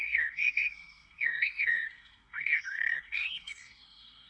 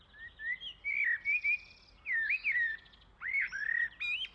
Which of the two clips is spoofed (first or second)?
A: first